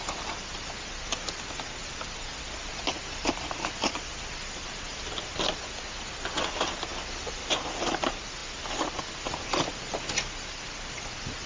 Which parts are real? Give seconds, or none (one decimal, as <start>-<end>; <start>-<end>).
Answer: 0.0-2.7; 5.5-11.5